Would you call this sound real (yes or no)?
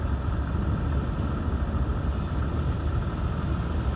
yes